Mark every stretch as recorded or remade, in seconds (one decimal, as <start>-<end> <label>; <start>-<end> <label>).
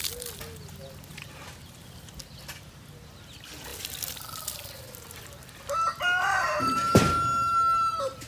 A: 0.0-8.3 recorded